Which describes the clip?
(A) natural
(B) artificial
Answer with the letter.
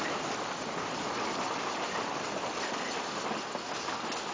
A